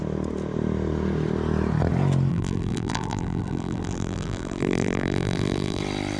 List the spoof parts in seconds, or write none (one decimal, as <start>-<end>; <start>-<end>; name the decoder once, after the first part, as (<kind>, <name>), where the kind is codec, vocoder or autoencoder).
2.3-5.8 (vocoder, BigVGAN v2)